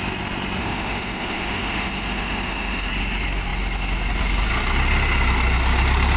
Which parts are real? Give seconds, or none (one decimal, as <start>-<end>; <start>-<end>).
0.0-0.6; 2.9-6.2